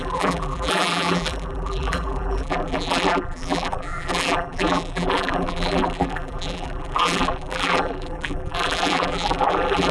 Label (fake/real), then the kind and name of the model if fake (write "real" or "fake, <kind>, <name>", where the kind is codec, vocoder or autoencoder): fake, vocoder, BigVGAN v2